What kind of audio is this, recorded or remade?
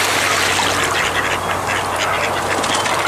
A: recorded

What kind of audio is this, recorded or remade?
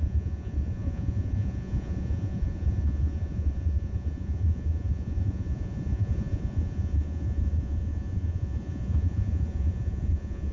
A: remade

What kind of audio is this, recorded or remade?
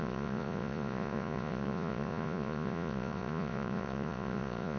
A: remade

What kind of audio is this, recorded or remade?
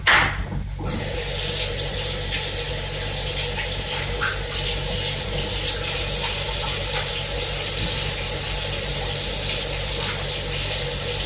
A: recorded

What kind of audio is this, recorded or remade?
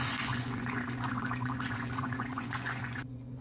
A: remade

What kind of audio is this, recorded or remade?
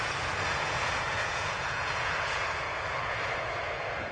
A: remade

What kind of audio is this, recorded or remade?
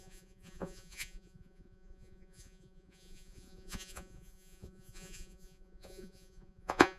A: remade